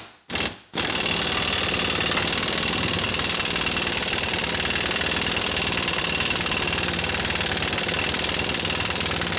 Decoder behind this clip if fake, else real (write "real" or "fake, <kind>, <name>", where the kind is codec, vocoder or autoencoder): real